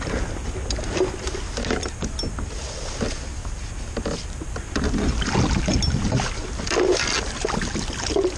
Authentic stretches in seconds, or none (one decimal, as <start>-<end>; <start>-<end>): 0.0-8.4

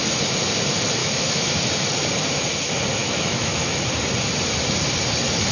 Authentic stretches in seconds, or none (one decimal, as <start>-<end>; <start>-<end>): 0.0-1.0; 1.6-3.0; 3.7-5.5

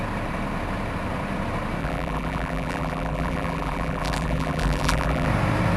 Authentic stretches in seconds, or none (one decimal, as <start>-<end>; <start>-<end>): 0.0-1.8; 5.3-5.8

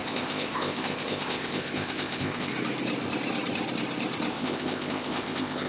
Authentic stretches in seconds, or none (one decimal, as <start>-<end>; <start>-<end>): 2.5-4.3

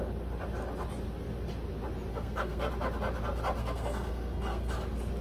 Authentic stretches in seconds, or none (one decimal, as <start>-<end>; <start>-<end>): 0.0-2.1; 2.7-3.6; 4.7-5.2

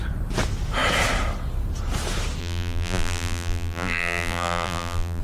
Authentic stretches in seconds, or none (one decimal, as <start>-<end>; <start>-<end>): 0.0-2.4

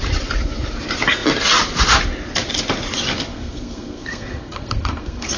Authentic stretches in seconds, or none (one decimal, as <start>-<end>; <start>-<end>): 0.0-3.3

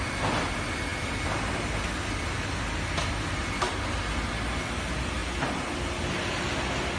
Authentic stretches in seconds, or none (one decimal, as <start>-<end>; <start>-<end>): 0.0-7.0